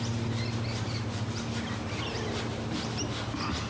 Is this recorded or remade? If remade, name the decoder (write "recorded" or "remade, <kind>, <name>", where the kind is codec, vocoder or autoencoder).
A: recorded